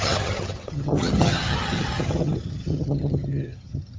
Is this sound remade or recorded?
remade